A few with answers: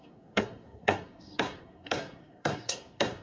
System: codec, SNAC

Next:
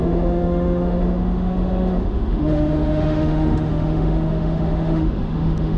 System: autoencoder, DAC-VAE